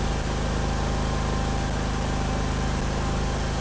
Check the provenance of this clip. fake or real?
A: real